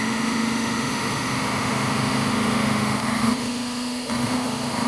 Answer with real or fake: fake